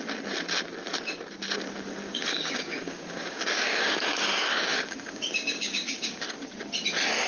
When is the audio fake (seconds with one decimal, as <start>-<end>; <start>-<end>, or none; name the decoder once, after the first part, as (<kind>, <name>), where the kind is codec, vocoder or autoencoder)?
2.0-6.2 (codec, DAC)